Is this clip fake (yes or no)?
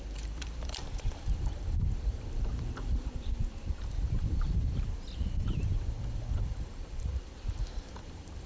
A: yes